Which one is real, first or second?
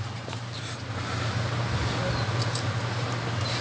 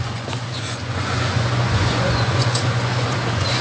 first